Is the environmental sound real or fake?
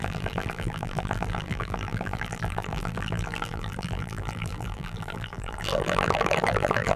fake